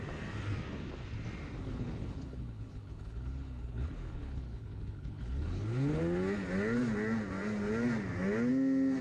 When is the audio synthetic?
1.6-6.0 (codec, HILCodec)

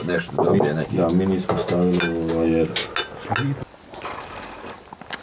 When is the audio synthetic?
none

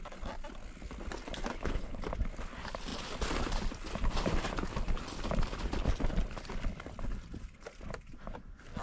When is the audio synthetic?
1.5-2.0 (codec, HILCodec)

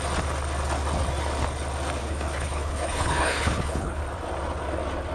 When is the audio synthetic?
2.0-4.0 (codec, HILCodec)

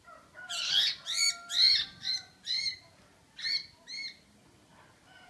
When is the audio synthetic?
none

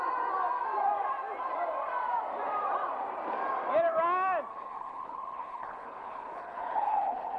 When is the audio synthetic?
4.5-7.4 (codec, HILCodec)